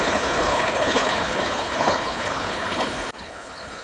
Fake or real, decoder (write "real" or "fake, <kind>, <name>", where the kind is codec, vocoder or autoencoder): fake, codec, HILCodec